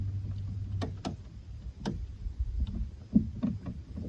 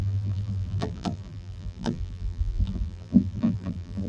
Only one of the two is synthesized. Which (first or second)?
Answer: second